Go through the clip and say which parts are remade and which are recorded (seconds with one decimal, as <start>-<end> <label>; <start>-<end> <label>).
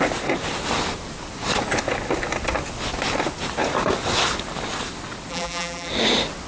0.0-5.3 recorded; 5.3-5.9 remade; 5.9-6.5 recorded